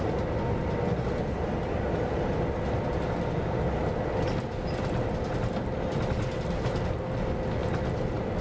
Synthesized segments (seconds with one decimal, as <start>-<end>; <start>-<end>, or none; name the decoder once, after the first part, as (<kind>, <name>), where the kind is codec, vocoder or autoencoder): none